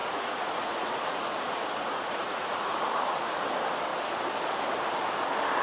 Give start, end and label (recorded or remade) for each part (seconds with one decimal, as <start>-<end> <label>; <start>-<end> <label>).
0.0-3.4 remade; 3.4-5.6 recorded